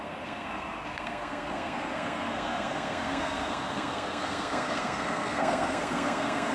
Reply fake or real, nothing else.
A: fake